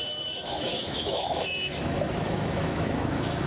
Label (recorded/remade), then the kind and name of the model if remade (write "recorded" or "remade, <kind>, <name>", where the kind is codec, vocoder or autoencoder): remade, autoencoder, DAC-VAE